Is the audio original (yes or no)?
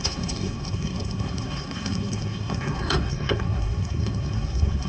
no